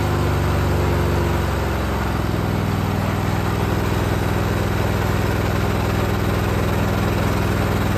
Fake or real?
real